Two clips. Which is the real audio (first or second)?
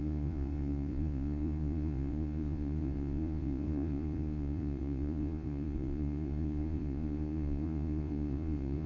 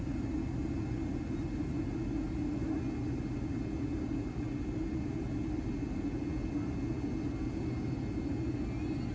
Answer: second